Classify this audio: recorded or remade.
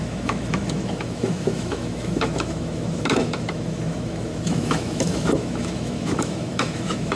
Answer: remade